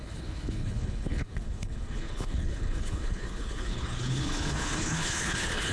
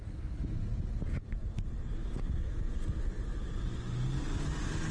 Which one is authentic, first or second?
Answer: second